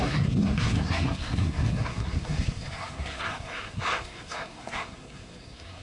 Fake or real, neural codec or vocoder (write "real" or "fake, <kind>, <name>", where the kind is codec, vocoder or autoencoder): fake, codec, SNAC